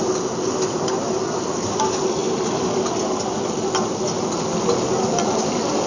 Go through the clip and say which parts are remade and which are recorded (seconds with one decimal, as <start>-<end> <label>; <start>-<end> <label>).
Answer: 0.0-2.2 recorded; 2.2-3.3 remade; 3.3-5.9 recorded